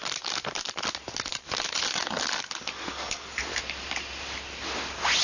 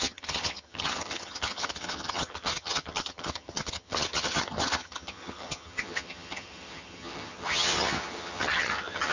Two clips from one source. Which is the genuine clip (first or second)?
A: first